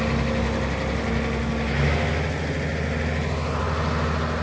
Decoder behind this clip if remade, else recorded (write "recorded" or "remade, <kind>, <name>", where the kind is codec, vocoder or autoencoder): recorded